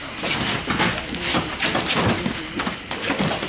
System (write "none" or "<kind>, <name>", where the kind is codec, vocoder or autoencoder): none